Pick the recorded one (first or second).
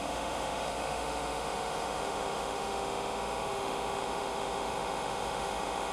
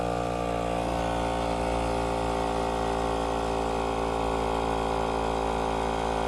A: second